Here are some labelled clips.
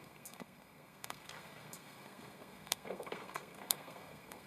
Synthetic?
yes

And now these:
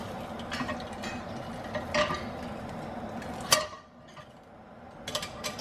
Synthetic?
no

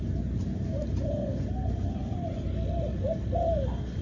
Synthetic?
no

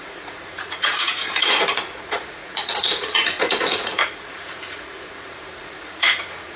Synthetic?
yes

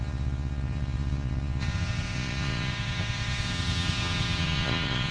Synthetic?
yes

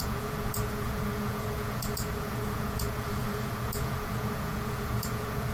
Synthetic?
yes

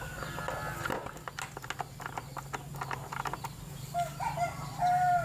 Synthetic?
no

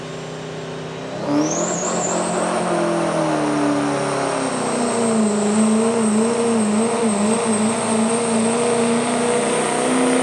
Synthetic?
no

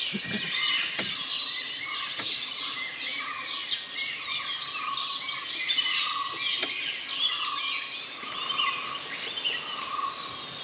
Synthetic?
no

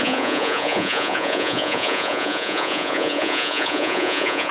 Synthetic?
yes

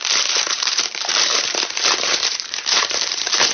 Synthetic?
yes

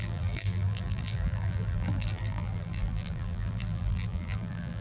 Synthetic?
yes